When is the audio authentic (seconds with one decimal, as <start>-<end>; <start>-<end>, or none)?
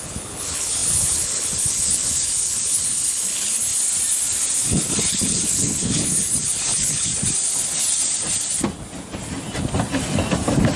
3.7-5.1; 7.1-10.8